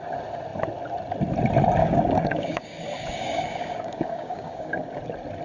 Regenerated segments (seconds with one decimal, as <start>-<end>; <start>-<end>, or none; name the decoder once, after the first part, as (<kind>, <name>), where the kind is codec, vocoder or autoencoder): 1.8-5.0 (codec, DAC)